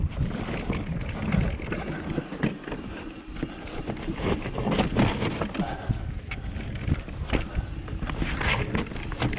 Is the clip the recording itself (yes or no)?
yes